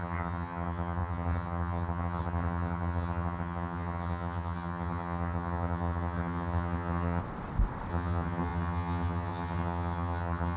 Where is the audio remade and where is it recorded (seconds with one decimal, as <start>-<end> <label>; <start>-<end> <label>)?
0.0-7.2 remade; 7.2-7.9 recorded; 7.9-10.6 remade